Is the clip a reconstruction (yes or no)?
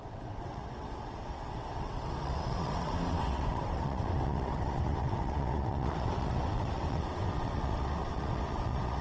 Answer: yes